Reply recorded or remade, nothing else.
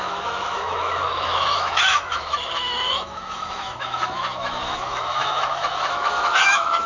remade